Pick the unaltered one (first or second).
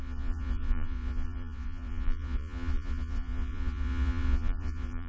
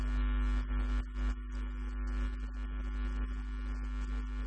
second